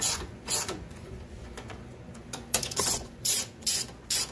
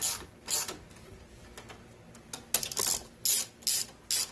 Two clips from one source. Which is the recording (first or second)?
second